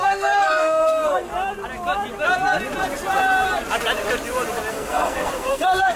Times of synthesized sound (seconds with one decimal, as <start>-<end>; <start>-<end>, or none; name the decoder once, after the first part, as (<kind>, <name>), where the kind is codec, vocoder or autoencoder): 0.0-1.3 (codec, SNAC); 4.7-6.0